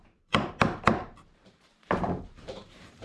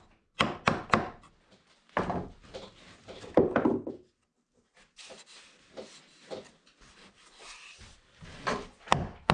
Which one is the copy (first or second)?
first